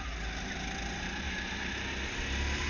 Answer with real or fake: real